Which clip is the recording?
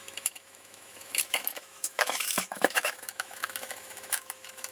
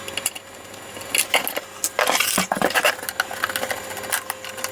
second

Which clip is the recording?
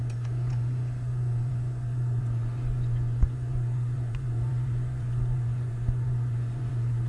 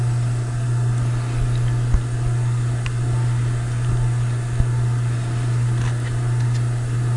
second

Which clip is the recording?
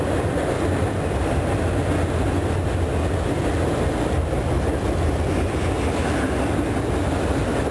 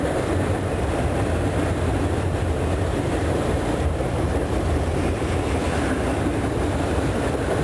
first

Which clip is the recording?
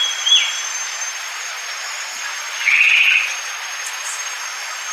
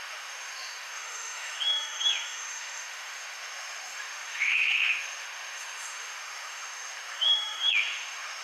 first